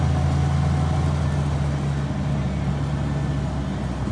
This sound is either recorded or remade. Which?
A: recorded